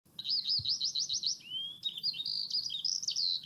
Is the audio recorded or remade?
recorded